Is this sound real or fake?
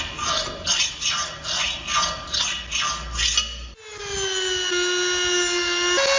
real